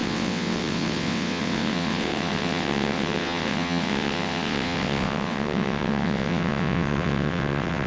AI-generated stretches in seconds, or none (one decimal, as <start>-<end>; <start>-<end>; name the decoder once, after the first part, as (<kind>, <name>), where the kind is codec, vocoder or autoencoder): 0.0-7.9 (vocoder, WaveNeXt)